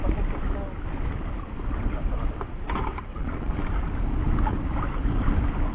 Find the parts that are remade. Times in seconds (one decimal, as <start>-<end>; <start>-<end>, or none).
3.1-3.6